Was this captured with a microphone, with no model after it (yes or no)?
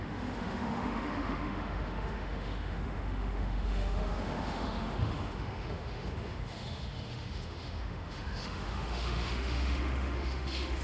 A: no